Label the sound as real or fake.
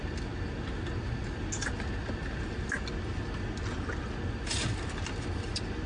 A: real